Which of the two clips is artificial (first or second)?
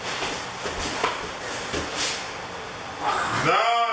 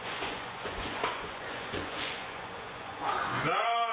second